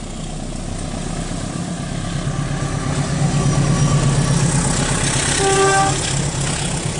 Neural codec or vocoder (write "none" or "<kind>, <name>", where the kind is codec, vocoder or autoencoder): none